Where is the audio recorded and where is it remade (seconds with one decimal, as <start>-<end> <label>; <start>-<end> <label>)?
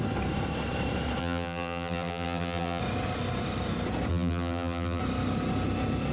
0.0-1.2 recorded; 1.2-2.8 remade; 2.8-4.1 recorded; 4.1-5.0 remade; 5.0-6.1 recorded